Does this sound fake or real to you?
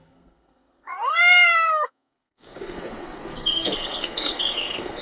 fake